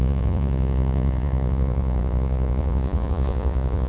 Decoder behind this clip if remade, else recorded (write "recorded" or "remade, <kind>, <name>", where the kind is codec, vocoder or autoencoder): remade, vocoder, Vocos